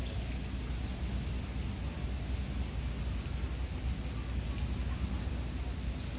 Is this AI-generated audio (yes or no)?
no